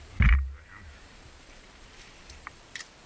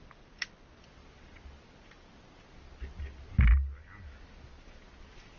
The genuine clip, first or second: second